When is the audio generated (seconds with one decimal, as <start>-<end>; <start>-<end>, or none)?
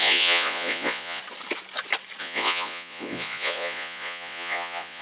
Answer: 0.0-1.2; 2.2-5.0